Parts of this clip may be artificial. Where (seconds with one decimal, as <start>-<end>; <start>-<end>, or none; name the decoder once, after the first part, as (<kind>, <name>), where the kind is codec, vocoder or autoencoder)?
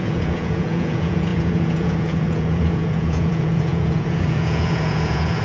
0.0-5.4 (vocoder, Vocos)